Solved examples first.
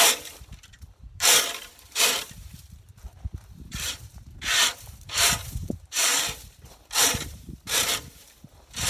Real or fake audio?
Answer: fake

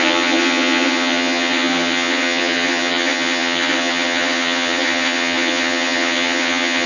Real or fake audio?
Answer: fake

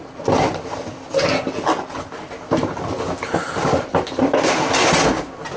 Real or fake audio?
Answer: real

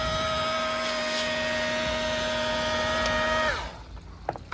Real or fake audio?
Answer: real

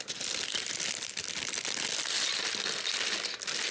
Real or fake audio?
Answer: real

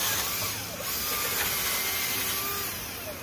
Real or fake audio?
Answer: real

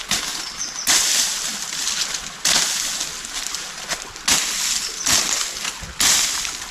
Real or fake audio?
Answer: real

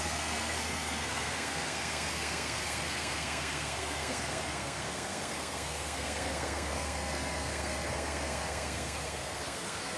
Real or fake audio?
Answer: fake